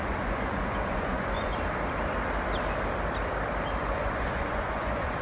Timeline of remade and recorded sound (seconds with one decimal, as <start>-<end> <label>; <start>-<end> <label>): 0.0-1.5 remade; 1.5-3.8 recorded; 3.8-5.2 remade